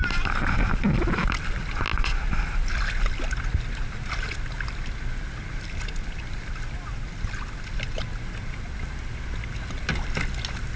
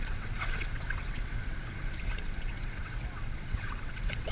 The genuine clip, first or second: first